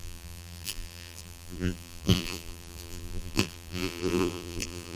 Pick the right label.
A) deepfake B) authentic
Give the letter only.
A